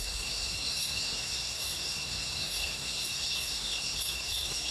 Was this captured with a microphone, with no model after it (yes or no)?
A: no